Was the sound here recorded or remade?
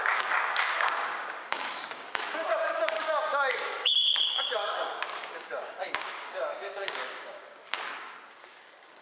remade